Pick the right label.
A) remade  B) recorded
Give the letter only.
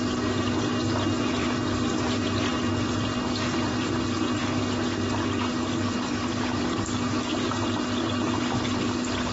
B